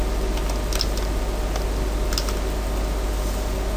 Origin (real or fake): real